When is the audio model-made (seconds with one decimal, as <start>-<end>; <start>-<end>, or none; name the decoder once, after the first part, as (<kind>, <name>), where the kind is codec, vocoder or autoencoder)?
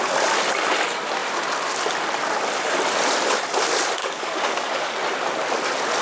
4.0-4.9 (codec, DAC)